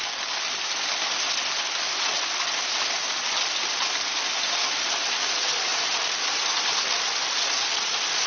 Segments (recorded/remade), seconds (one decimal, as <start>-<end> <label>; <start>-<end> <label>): 0.0-8.3 recorded

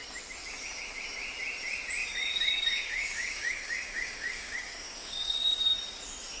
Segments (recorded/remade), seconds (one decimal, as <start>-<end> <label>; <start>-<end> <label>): 0.0-2.0 recorded; 2.0-5.8 remade; 5.8-6.4 recorded